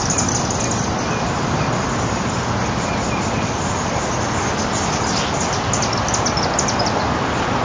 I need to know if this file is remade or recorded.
recorded